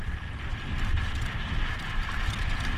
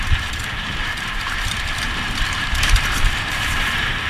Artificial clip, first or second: second